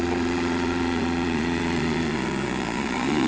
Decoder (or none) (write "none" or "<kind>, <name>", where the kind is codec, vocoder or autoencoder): vocoder, Vocos